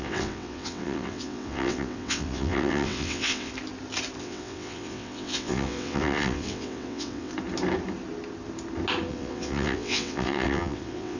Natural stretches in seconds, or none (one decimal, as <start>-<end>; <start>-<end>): 3.5-4.2; 7.3-9.1